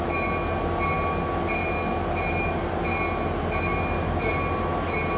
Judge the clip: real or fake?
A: real